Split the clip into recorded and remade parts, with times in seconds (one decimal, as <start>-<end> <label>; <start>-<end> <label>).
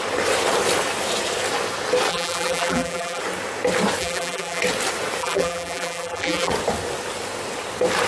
0.0-2.1 recorded; 2.1-3.2 remade; 3.2-4.0 recorded; 4.0-4.6 remade; 4.6-5.2 recorded; 5.2-6.5 remade; 6.5-8.1 recorded